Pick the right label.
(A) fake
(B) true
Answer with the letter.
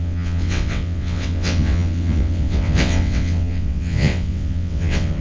A